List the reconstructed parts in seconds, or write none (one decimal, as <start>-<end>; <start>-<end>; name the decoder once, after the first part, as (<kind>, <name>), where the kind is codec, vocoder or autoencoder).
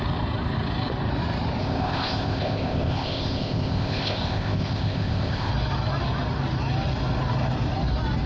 1.6-5.5 (codec, ZipCodec)